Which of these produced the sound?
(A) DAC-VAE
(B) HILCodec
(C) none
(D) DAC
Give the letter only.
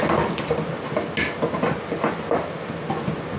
C